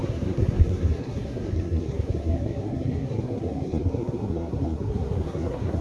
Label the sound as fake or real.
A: fake